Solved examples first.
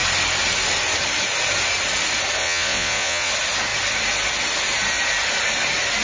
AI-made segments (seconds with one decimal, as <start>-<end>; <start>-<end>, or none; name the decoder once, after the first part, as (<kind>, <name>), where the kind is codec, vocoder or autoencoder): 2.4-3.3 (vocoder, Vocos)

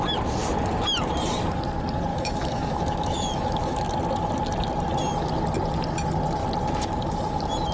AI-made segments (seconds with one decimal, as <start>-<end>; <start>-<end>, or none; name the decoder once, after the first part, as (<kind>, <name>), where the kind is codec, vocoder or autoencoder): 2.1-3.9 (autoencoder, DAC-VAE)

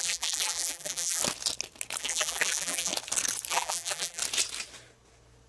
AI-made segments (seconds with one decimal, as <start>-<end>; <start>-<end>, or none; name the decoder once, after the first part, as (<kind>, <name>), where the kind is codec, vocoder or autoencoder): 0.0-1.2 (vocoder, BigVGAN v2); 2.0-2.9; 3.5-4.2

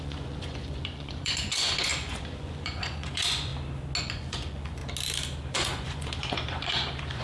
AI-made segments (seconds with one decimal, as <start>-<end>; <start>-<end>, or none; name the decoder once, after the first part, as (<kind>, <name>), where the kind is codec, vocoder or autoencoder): 0.0-3.5 (vocoder, Vocos); 4.0-4.8; 5.5-7.2